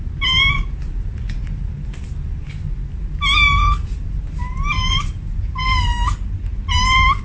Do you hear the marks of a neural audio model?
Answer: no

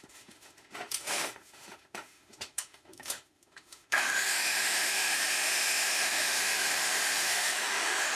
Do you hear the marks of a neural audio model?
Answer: yes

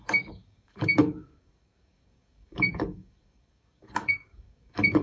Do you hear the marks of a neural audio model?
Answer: yes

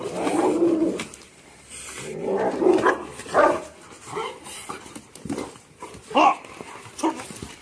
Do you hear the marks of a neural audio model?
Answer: no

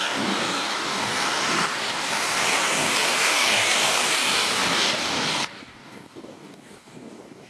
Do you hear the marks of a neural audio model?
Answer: yes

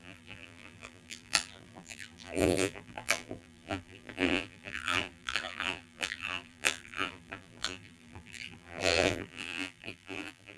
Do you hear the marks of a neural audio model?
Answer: yes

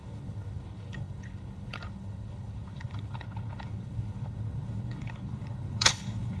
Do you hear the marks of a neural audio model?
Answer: yes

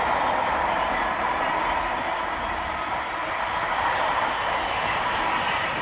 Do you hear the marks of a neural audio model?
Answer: no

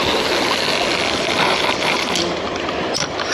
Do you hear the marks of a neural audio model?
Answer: no